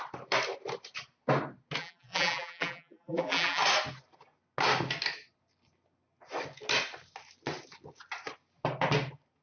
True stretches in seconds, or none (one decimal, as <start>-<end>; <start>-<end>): 0.0-1.8; 3.6-9.4